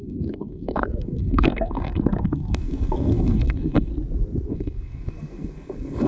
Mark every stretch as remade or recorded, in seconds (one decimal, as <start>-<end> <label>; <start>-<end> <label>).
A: 0.0-3.9 remade; 3.9-4.5 recorded; 4.5-6.1 remade